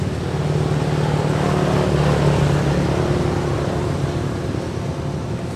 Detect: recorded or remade recorded